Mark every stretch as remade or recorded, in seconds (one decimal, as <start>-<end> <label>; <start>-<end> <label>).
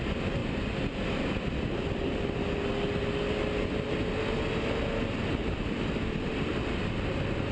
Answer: 0.0-5.4 recorded; 5.4-6.3 remade; 6.3-7.5 recorded